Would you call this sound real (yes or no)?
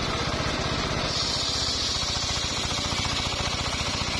yes